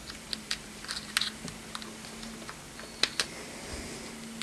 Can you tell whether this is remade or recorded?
recorded